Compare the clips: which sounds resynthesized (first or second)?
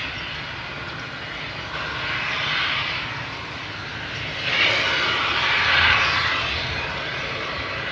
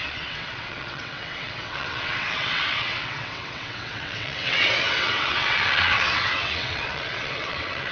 second